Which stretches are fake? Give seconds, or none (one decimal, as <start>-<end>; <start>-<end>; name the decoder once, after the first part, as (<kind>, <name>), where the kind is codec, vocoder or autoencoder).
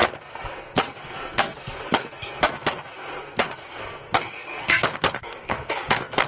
0.0-6.3 (codec, SNAC)